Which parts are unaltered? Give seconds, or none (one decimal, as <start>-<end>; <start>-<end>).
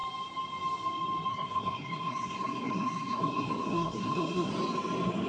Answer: 0.0-1.3; 4.5-5.3